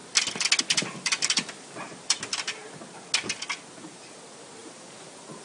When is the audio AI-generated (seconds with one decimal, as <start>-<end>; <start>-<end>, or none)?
0.6-2.6; 3.8-5.4